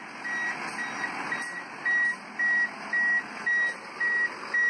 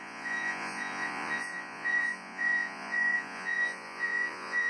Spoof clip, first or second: second